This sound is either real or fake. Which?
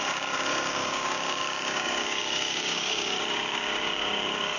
fake